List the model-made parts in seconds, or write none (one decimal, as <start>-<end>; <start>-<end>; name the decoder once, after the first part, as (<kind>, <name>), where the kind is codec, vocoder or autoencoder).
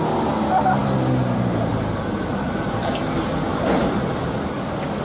2.3-2.9 (vocoder, BigVGAN v2); 3.5-4.2